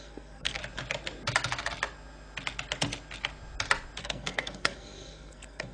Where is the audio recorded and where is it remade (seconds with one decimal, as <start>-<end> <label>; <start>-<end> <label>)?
0.0-0.6 remade; 0.6-4.0 recorded; 4.0-5.7 remade